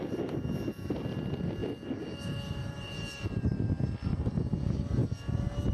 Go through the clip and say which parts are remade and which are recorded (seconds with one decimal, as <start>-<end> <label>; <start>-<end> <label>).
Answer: 0.0-5.7 recorded

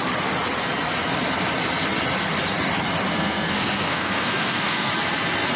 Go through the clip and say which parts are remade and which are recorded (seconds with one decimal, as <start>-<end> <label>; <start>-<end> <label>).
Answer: 0.0-3.1 recorded; 3.1-4.9 remade; 4.9-5.6 recorded

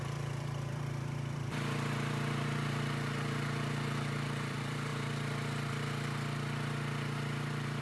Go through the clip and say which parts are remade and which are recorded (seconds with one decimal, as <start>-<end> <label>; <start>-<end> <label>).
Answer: 0.0-7.8 remade

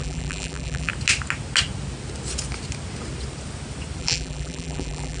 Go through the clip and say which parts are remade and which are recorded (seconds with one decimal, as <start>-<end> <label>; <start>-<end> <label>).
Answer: 0.0-0.9 remade; 0.9-4.0 recorded; 4.0-5.2 remade